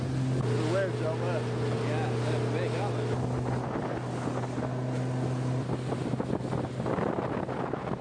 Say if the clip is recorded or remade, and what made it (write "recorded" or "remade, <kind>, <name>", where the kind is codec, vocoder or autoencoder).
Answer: recorded